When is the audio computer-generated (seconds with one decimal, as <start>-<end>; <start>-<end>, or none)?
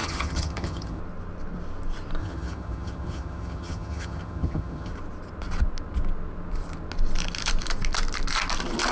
0.0-1.0; 2.2-4.9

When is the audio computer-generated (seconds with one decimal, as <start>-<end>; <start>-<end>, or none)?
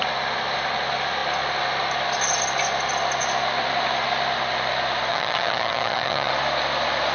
5.1-6.3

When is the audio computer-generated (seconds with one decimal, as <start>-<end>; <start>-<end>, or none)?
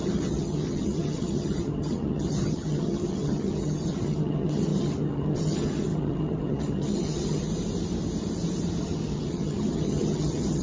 0.0-7.5; 8.8-10.6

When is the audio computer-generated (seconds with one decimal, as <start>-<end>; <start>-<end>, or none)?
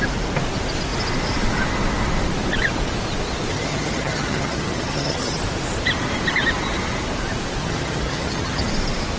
3.5-5.3; 7.6-8.7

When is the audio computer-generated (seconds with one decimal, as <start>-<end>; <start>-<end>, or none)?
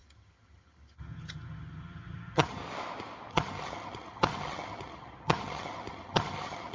0.0-2.6; 3.3-6.7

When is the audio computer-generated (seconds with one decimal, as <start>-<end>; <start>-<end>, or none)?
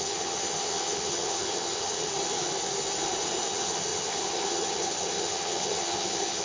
0.0-2.1; 3.5-6.4